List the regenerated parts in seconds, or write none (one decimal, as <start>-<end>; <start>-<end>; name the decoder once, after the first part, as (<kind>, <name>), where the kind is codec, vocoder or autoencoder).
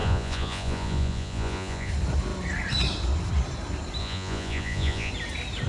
0.0-1.9 (vocoder, Vocos); 4.0-5.1